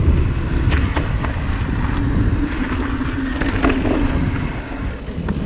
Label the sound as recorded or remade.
recorded